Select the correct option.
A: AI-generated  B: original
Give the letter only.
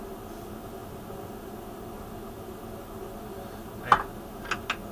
B